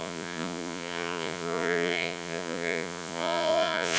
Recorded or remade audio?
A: remade